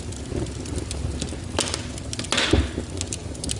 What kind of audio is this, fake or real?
real